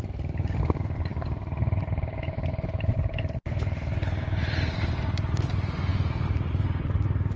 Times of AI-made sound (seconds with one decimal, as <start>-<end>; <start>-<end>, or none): 0.0-7.4

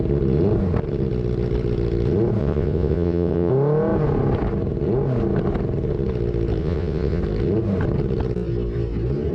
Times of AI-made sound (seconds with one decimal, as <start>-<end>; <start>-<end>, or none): 2.4-3.5; 6.6-7.2

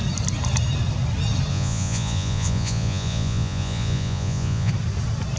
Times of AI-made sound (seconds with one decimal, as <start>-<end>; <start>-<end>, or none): 1.5-4.7

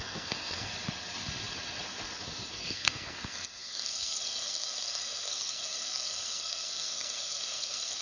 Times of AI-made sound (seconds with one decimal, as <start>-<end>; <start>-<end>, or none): 0.0-0.7; 2.5-8.0

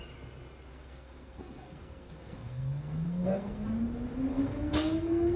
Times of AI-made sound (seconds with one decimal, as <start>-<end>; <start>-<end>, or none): 0.7-3.7; 4.3-5.4

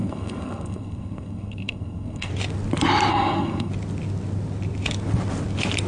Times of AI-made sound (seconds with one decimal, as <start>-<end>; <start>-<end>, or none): 0.0-2.3; 3.1-3.7

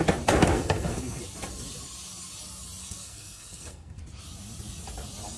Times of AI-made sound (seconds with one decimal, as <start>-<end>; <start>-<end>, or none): 0.5-1.2; 2.8-4.0